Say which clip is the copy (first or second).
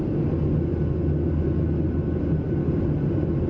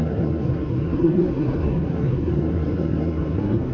second